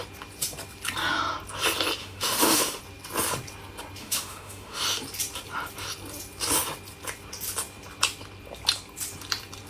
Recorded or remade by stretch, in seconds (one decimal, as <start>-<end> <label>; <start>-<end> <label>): 0.0-2.0 recorded; 2.0-2.8 remade; 2.8-4.0 recorded; 4.0-4.8 remade; 4.8-9.7 recorded